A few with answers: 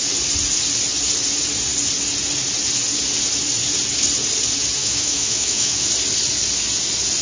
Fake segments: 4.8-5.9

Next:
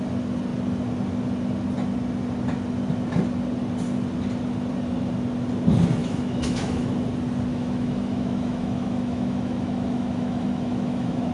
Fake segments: 6.0-6.9; 7.5-11.3

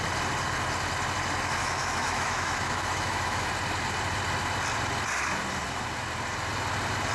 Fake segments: 1.6-3.5

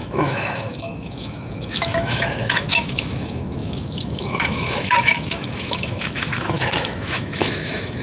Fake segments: 0.0-8.0

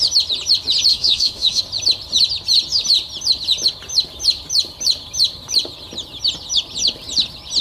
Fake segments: 0.9-1.6

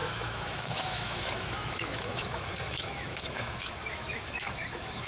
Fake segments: 0.0-5.1

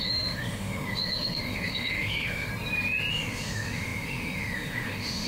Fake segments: 0.0-2.5; 3.1-5.3